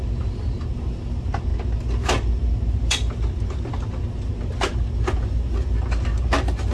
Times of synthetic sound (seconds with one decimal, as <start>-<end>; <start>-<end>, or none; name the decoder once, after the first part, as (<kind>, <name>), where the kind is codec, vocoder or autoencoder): none

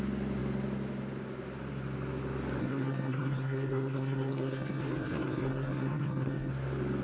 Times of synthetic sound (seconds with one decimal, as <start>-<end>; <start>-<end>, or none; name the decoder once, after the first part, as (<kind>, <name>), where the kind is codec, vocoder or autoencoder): 2.6-6.5 (codec, SNAC)